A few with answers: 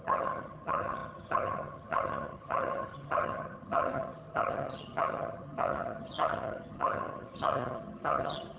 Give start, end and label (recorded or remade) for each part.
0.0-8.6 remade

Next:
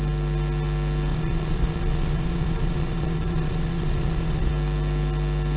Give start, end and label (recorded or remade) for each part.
0.0-1.1 recorded; 1.1-4.5 remade; 4.5-5.6 recorded

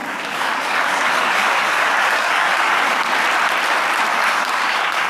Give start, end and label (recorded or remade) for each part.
0.0-3.1 remade; 3.1-4.1 recorded; 4.1-5.1 remade

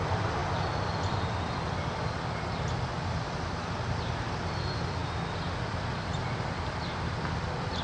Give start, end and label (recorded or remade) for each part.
0.0-0.4 remade; 0.4-1.1 recorded; 1.1-7.8 remade